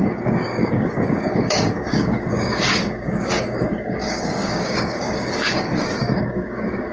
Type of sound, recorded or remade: remade